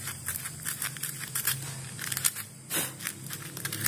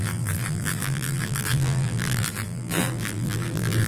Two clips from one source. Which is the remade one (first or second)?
second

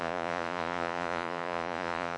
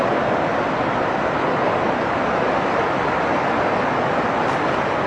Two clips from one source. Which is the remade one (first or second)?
first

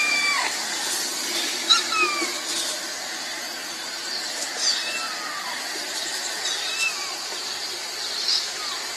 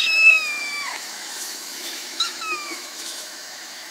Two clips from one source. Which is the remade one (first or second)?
second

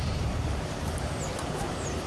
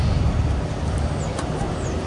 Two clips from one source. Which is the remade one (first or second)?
first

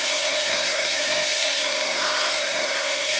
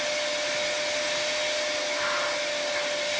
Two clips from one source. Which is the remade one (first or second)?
first